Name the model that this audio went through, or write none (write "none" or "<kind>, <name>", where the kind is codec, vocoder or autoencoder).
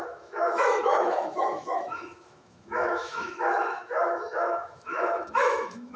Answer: autoencoder, DAC-VAE